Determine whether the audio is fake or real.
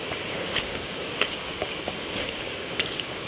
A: fake